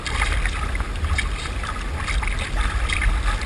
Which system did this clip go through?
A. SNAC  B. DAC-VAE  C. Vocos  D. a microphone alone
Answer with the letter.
D